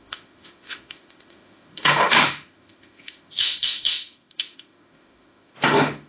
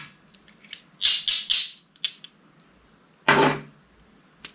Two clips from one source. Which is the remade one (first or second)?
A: first